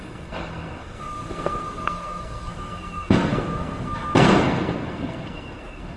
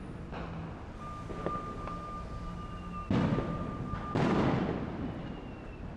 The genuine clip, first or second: second